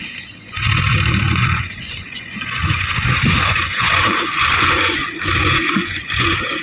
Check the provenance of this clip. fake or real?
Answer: fake